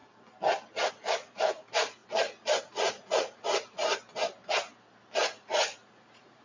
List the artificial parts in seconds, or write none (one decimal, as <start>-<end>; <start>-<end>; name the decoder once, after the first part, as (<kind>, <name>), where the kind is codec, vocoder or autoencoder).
0.9-2.0 (vocoder, Vocos); 2.6-3.8; 5.2-6.4